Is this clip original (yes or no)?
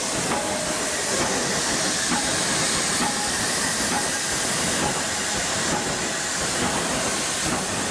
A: yes